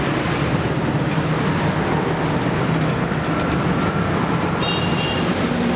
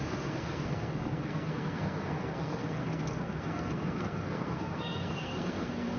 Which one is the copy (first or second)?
second